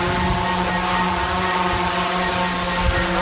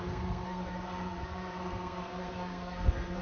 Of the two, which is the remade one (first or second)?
second